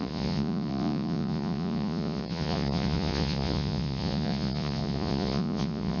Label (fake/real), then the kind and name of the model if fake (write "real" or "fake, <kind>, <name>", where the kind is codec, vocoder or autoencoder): fake, vocoder, Vocos